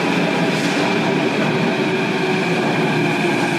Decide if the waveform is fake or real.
real